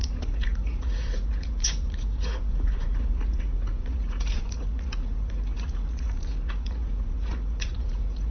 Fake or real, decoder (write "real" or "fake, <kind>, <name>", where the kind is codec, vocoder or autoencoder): fake, vocoder, Vocos